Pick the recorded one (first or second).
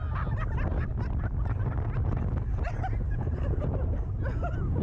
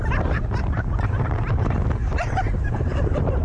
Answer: first